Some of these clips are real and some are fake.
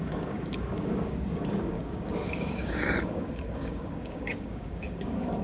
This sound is fake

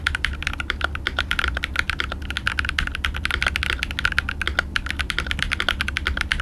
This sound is real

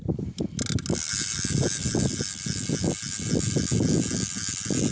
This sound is real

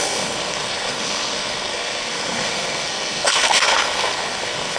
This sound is fake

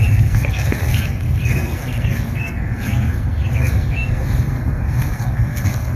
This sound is fake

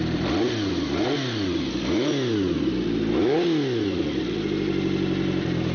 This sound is real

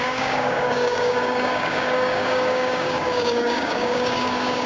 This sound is fake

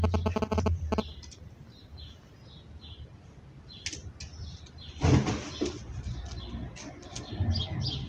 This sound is real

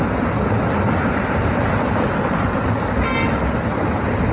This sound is real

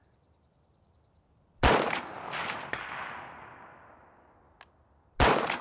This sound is real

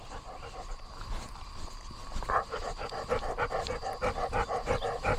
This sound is real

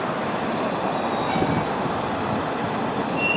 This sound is real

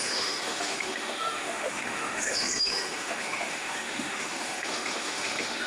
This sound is fake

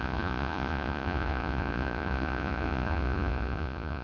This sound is fake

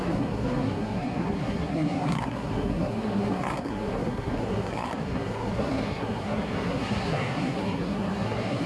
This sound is fake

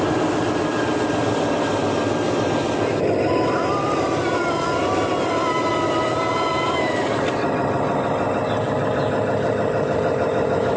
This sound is real